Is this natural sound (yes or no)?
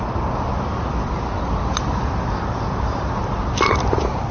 yes